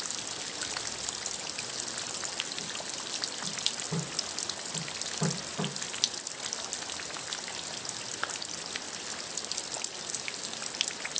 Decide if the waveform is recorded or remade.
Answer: recorded